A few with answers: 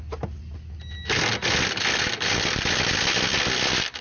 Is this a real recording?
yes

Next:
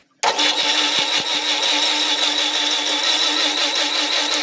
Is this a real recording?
yes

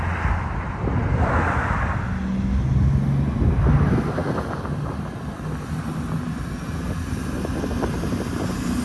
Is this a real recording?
yes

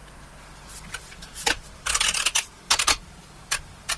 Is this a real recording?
no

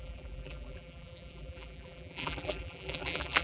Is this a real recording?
no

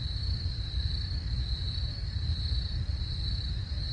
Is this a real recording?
yes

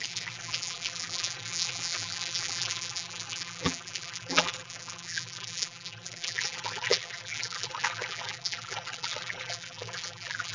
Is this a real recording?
no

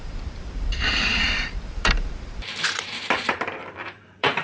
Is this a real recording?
no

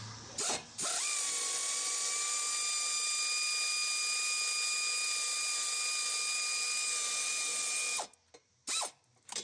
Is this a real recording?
yes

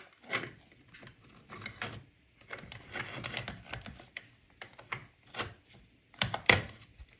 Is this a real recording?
no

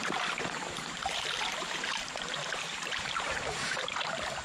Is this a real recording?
no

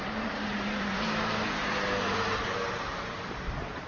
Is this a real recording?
no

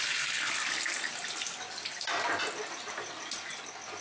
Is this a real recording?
yes